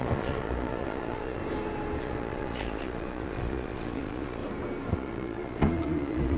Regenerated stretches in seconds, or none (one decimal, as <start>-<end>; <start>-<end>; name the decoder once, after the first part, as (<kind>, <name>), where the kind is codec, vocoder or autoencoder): 0.0-1.4 (vocoder, Vocos); 2.0-4.4; 4.9-6.4